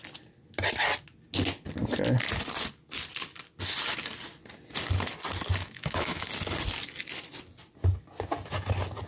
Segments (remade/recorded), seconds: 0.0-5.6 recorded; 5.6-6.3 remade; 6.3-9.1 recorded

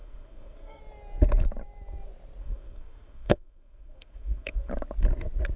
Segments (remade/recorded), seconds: 0.0-0.8 remade; 0.8-2.4 recorded; 2.4-4.7 remade; 4.7-5.6 recorded